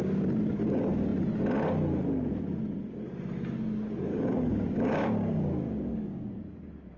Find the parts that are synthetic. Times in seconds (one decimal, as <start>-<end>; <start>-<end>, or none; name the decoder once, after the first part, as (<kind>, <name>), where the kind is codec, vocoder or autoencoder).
4.1-6.4 (codec, DAC)